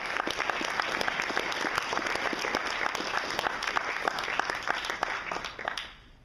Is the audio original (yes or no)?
yes